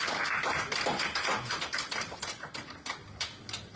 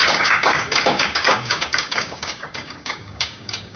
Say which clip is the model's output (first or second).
second